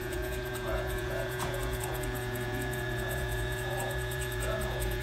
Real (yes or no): no